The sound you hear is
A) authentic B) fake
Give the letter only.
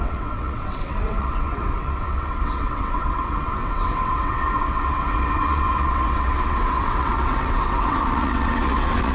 B